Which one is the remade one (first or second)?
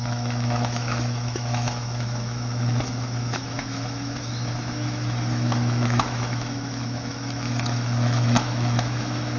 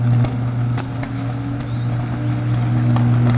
first